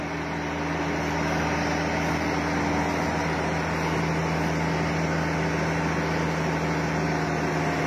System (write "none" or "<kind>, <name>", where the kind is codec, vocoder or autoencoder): none